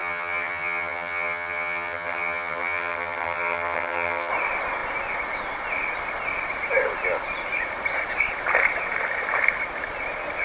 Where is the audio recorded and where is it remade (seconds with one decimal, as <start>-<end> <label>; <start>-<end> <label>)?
0.0-4.3 remade; 4.3-10.4 recorded